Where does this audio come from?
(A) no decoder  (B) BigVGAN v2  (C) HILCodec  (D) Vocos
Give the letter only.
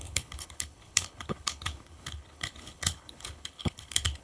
C